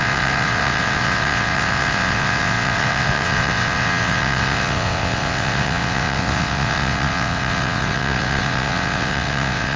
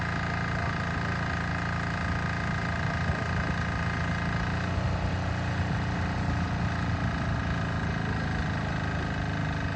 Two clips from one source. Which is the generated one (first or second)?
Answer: first